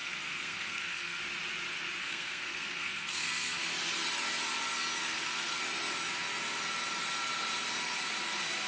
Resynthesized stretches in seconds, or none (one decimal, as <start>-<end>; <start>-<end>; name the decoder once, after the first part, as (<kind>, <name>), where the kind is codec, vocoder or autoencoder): 0.0-1.2 (codec, SNAC); 2.0-3.7; 5.0-5.6